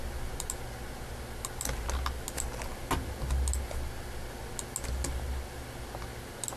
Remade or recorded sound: recorded